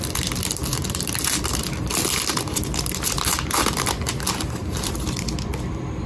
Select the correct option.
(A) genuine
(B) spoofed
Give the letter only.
B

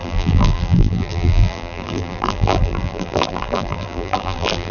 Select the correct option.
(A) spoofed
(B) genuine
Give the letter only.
A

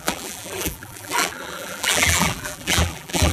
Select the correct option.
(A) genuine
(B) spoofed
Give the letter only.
B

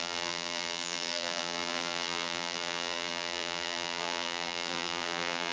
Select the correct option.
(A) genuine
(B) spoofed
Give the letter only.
B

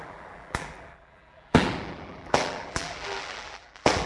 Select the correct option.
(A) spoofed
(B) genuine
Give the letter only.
A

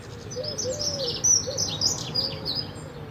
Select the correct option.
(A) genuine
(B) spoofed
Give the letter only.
A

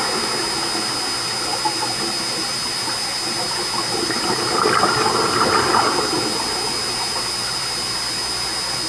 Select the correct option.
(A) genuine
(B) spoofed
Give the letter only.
A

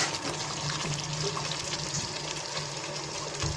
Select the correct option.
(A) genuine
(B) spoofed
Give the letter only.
A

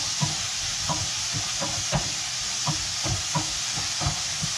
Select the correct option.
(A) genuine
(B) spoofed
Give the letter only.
A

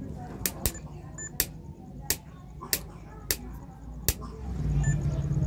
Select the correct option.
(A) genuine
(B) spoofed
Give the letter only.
A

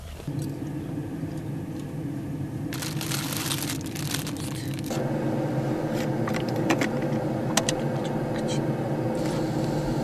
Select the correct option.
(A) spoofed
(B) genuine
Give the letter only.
B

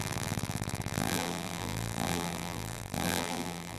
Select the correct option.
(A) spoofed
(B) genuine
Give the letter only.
A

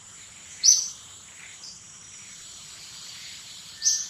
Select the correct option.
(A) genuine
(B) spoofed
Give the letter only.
B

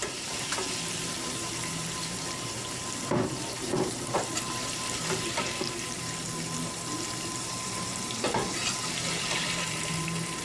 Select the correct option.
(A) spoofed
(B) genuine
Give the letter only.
A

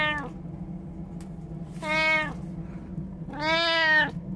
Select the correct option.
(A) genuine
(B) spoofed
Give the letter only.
A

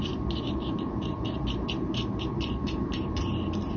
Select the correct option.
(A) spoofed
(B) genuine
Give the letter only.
A